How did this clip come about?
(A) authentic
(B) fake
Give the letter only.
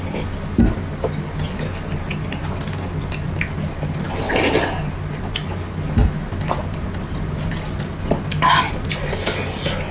A